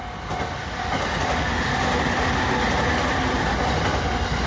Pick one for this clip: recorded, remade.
recorded